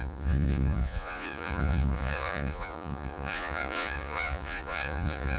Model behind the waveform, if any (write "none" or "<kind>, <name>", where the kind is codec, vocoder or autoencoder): vocoder, Vocos